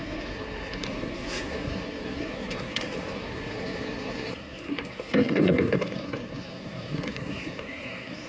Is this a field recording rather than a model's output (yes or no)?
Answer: no